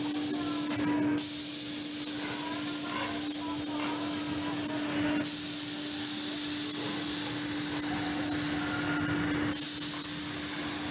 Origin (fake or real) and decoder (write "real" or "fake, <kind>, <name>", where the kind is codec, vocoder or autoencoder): real